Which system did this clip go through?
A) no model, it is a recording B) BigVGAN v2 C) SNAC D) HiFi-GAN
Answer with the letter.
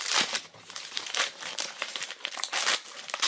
B